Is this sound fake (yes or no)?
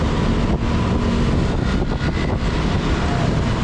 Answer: no